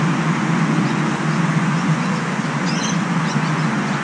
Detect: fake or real fake